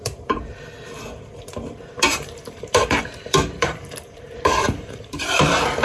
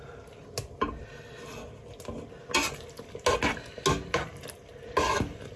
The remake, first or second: first